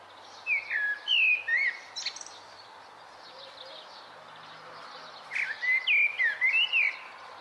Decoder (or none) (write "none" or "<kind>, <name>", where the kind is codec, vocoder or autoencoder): none